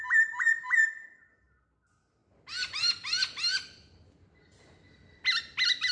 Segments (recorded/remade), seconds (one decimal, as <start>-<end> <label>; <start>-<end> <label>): 0.0-0.8 recorded; 0.8-1.6 remade; 1.6-2.2 recorded; 2.2-5.1 remade; 5.1-5.9 recorded